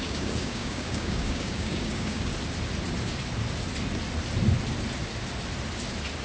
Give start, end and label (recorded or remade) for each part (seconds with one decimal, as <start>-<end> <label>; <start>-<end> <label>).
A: 0.0-2.3 remade; 2.3-6.2 recorded